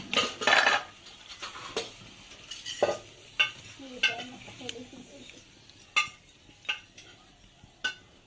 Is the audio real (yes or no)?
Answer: yes